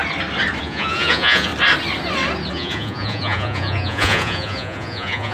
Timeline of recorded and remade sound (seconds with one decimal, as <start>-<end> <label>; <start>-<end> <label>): 0.0-0.6 recorded; 0.6-1.5 remade; 1.5-2.5 recorded; 2.5-5.3 remade